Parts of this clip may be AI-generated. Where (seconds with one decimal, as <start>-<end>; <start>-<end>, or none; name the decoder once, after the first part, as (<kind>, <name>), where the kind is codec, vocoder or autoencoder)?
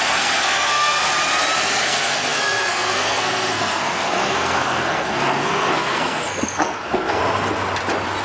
0.0-1.1 (codec, SNAC); 1.7-7.2